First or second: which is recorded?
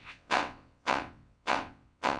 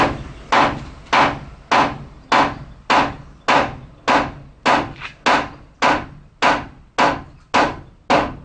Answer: second